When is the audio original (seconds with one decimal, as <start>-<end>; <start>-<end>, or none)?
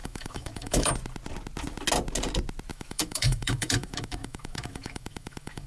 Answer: 0.9-2.7